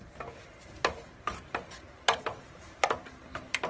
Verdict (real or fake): real